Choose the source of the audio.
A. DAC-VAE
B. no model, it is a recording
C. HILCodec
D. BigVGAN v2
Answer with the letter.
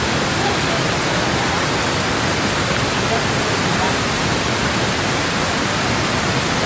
B